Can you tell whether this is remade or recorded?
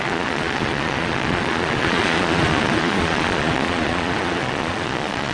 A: remade